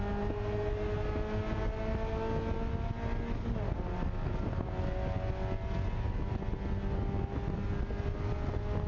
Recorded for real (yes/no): yes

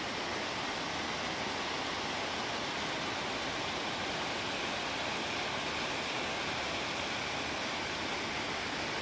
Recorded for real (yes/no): yes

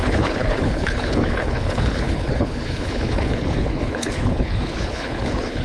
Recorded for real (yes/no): no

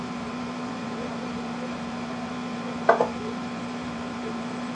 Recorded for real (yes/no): no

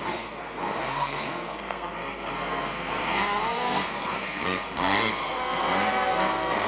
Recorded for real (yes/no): no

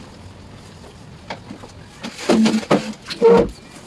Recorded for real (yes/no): yes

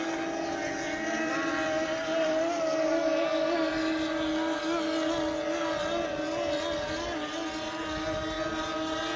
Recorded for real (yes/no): yes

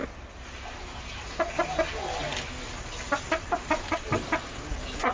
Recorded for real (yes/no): yes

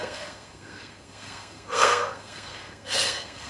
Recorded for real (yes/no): no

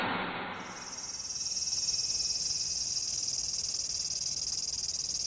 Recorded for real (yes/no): yes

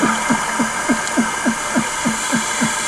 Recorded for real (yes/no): yes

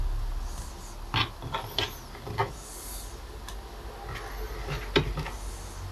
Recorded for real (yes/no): yes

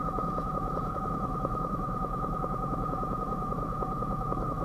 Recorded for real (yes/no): no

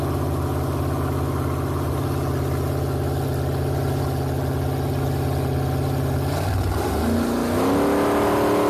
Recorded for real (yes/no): yes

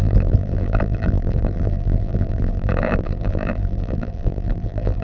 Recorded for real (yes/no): no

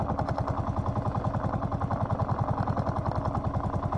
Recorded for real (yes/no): yes